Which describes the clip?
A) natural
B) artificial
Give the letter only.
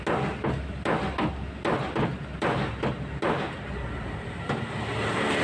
A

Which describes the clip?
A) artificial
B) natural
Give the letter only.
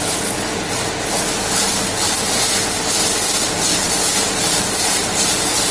B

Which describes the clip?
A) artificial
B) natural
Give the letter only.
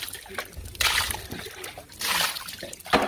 B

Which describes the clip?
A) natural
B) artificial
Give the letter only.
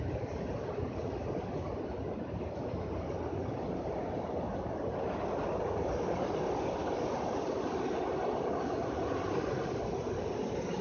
A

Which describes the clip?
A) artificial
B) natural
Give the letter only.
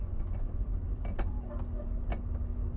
B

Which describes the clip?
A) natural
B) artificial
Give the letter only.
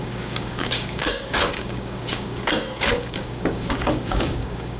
B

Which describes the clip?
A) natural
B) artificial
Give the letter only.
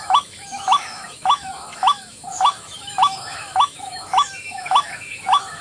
B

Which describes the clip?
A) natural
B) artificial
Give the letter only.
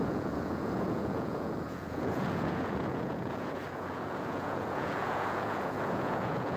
B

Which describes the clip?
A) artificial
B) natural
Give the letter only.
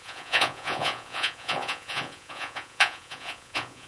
A